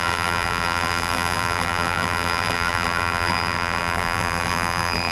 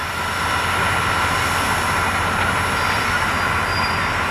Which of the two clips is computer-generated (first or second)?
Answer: first